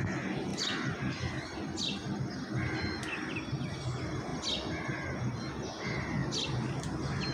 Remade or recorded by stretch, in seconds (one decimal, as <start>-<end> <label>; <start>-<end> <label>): 0.0-7.3 recorded